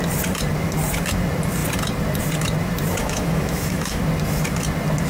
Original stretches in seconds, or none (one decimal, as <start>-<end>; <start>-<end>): 0.0-3.0; 4.0-5.1